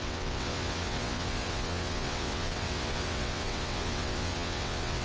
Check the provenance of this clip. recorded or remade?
remade